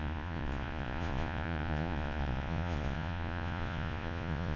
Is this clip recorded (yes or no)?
no